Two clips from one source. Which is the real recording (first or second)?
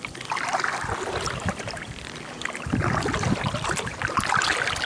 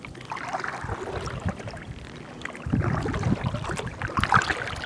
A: second